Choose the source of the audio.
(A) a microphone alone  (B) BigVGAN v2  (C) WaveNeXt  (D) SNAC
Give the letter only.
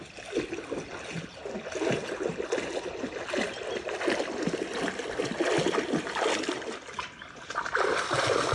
A